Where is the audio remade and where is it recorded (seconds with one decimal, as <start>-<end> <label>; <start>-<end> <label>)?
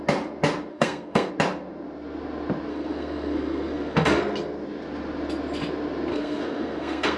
0.0-0.7 recorded; 0.7-1.3 remade; 1.3-2.7 recorded; 2.7-4.2 remade; 4.2-6.1 recorded; 6.1-7.2 remade